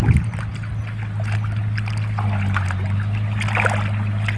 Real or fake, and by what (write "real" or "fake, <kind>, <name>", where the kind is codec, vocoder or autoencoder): real